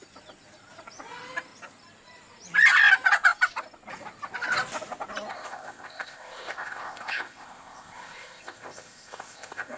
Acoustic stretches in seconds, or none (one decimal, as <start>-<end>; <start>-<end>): 0.0-5.3